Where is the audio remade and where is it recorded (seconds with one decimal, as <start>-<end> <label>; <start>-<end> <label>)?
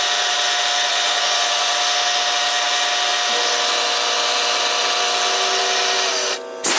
0.0-0.9 recorded; 0.9-1.7 remade; 1.7-6.8 recorded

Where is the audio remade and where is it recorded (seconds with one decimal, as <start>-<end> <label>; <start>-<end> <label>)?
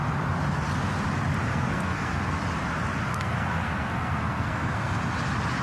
0.0-1.5 recorded; 1.5-2.4 remade; 2.4-3.1 recorded; 3.1-4.9 remade; 4.9-5.6 recorded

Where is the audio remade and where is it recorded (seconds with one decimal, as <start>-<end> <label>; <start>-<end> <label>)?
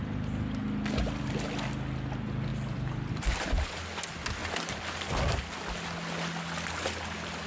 0.0-2.5 recorded; 2.5-3.1 remade; 3.1-7.5 recorded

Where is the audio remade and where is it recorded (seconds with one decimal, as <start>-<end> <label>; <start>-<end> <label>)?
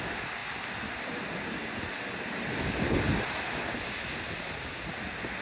0.0-5.4 recorded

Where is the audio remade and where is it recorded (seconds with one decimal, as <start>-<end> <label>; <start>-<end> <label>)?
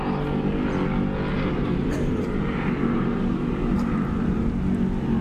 0.0-1.3 recorded; 1.3-4.4 remade; 4.4-5.2 recorded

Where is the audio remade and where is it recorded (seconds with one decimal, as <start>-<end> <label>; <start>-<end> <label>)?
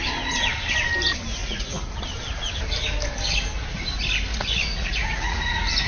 0.0-1.4 recorded; 1.4-1.9 remade; 1.9-4.3 recorded; 4.3-5.9 remade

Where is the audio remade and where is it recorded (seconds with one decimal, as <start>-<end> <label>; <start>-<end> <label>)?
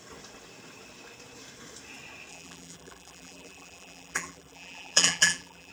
0.0-2.3 recorded; 2.3-5.7 remade